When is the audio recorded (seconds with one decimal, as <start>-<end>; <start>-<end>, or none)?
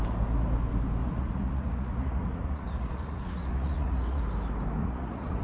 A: 0.0-1.0; 4.2-4.8